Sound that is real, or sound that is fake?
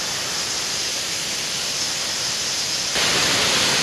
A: real